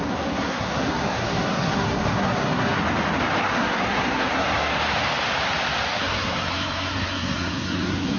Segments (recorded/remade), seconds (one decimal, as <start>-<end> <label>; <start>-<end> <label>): 0.0-2.8 remade; 2.8-3.4 recorded; 3.4-4.8 remade; 4.8-6.0 recorded; 6.0-8.2 remade